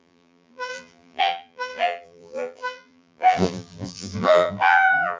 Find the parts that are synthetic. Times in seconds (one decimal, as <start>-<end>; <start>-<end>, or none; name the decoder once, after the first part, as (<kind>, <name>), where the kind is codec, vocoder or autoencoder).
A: 0.0-5.2 (vocoder, BigVGAN v2)

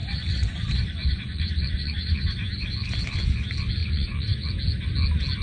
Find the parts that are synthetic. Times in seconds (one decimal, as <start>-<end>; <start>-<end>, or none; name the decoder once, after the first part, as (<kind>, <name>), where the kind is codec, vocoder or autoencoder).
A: 0.0-2.5 (vocoder, Vocos); 3.8-4.5

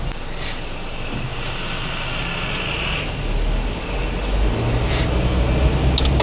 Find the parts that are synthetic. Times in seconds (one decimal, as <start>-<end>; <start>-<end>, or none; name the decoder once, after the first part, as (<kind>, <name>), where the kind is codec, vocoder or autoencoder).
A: none

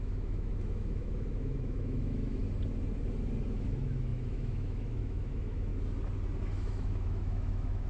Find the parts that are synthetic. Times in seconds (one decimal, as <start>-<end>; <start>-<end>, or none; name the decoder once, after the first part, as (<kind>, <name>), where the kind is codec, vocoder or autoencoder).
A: 0.0-2.4 (autoencoder, DAC-VAE); 3.5-5.7; 6.4-7.9

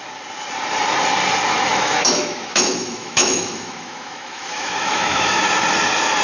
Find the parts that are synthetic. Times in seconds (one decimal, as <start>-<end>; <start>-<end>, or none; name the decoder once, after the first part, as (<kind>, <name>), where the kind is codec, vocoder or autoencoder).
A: 1.7-5.4 (autoencoder, DAC-VAE)

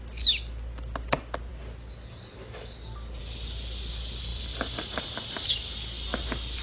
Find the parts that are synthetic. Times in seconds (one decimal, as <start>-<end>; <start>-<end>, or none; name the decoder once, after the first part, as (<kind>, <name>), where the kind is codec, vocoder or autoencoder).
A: 4.3-5.5 (vocoder, BigVGAN v2)

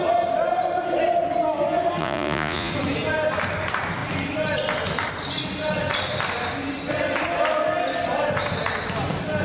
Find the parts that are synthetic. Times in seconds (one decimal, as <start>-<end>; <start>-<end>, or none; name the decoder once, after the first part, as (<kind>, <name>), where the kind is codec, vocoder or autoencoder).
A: 2.0-2.7 (vocoder, Vocos)

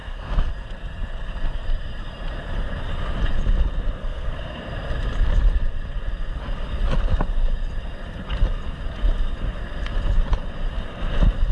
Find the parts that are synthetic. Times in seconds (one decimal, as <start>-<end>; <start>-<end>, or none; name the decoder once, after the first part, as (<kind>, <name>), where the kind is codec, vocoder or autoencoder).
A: 0.0-0.5 (codec, SNAC); 4.0-4.6